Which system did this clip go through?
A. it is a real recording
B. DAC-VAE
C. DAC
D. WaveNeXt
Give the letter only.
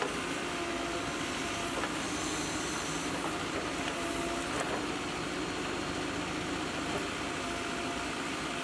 A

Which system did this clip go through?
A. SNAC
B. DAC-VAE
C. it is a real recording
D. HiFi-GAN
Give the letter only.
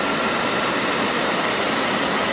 C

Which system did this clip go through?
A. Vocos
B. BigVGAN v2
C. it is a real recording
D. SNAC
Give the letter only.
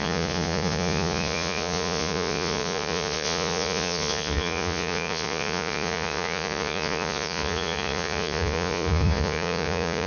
A